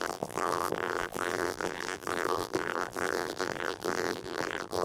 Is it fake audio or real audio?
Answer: fake